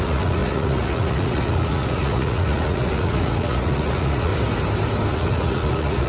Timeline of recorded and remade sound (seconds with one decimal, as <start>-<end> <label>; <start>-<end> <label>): 0.0-4.3 remade; 4.3-5.1 recorded; 5.1-6.1 remade